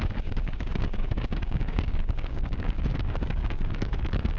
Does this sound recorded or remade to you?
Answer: remade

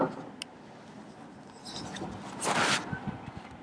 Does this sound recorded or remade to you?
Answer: recorded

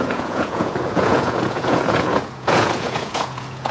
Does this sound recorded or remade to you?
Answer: remade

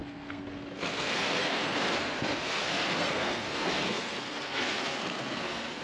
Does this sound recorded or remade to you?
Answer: remade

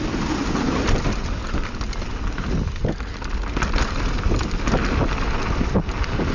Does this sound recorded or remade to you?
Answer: recorded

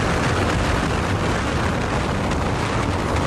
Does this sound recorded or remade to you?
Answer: recorded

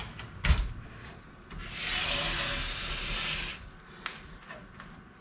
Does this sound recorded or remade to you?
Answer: recorded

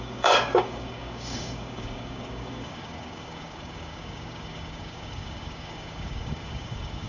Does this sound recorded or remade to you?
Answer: remade